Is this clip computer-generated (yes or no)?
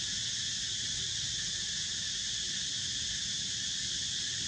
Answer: no